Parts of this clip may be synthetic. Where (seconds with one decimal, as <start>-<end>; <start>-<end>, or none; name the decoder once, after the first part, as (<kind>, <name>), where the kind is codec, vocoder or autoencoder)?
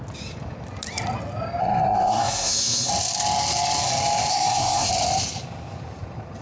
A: 1.6-2.9 (codec, SNAC); 4.3-4.9